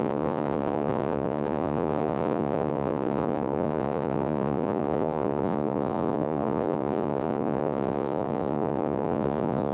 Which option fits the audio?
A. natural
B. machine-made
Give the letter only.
B